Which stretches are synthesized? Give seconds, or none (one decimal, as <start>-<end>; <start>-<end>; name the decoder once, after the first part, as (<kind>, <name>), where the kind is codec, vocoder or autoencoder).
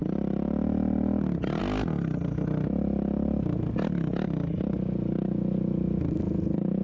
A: none